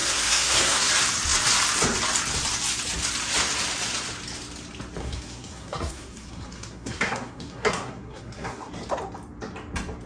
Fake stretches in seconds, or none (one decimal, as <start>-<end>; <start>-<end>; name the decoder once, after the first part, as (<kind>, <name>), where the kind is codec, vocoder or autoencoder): 0.0-0.9 (codec, SNAC); 5.0-8.7